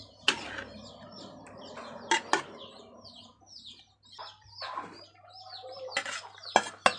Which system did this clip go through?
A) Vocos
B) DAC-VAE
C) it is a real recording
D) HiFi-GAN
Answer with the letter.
C